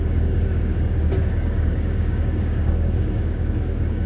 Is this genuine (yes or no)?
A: no